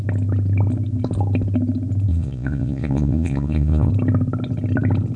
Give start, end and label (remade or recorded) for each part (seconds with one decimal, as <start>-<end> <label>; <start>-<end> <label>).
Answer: 0.0-2.1 recorded; 2.1-3.9 remade; 3.9-5.2 recorded